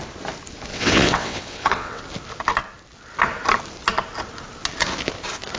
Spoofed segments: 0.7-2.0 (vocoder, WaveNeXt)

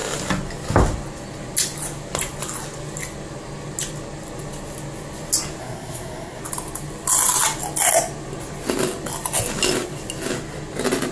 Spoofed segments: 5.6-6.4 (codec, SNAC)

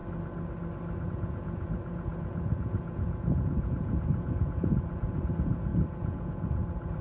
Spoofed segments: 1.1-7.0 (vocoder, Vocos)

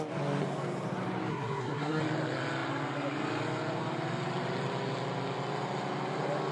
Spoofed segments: 1.3-2.0 (codec, SNAC)

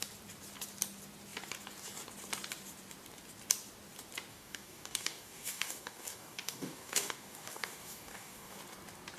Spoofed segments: 4.3-8.6 (codec, DAC)

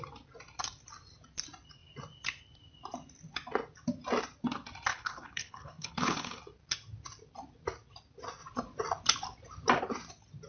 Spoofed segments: 4.9-6.4 (codec, HILCodec)